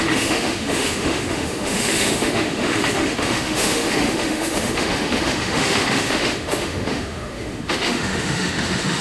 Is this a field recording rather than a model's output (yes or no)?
no